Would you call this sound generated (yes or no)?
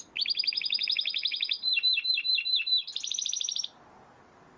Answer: no